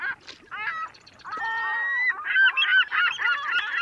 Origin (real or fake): real